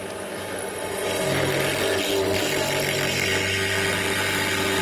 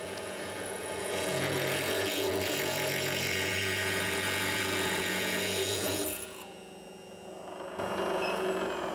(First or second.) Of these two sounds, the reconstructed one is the second